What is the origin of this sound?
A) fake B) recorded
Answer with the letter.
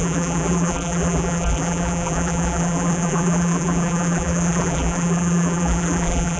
A